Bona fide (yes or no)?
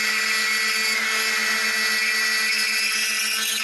yes